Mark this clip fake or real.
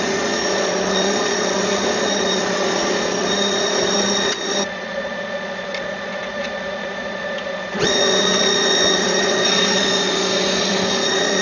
fake